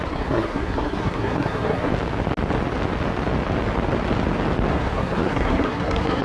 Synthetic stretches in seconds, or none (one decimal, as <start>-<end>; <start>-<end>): 0.0-1.9; 4.7-6.2